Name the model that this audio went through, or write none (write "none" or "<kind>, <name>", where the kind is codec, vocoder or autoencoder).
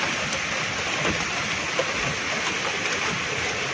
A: none